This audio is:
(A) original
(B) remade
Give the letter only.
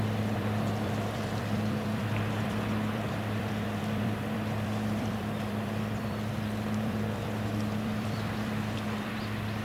B